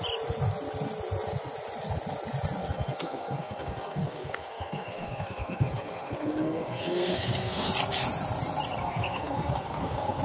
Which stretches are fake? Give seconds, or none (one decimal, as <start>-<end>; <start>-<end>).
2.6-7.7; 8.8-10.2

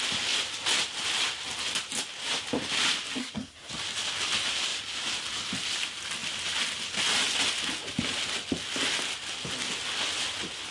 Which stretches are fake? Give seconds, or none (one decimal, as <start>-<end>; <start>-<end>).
3.2-3.7

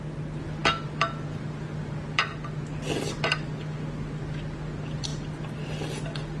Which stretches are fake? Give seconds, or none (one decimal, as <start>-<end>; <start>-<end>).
none

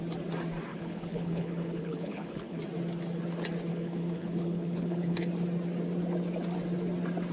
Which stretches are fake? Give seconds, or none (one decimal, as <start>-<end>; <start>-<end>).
0.7-2.6; 3.7-5.3